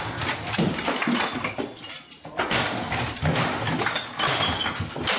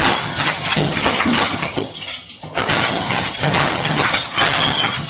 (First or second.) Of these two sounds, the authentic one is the first